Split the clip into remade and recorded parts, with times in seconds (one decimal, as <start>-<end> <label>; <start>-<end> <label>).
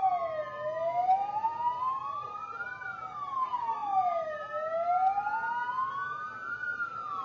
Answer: 0.0-7.2 recorded